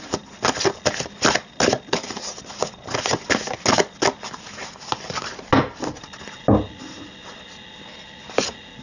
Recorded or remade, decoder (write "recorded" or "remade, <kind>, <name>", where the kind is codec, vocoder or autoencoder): recorded